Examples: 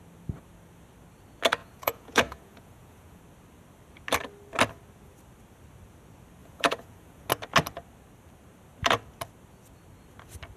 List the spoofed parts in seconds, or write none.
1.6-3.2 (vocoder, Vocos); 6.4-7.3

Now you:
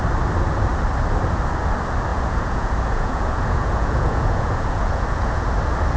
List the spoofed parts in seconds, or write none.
2.1-5.5 (vocoder, Vocos)

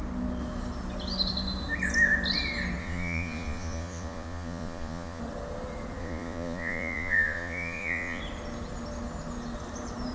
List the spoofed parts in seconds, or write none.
2.8-5.2 (vocoder, Vocos); 6.0-8.2

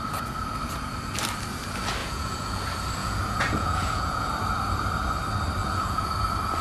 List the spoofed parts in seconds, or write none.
2.0-2.6 (vocoder, Vocos); 3.0-4.3; 5.6-6.1